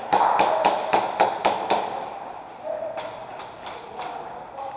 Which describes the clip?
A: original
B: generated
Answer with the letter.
A